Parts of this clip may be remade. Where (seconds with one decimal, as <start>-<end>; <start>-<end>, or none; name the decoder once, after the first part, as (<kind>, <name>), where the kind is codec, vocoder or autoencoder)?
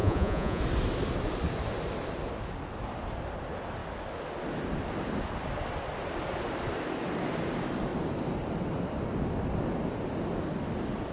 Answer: 0.0-0.6 (vocoder, Vocos)